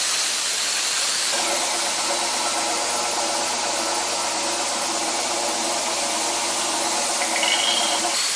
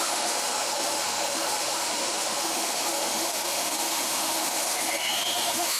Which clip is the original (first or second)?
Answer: first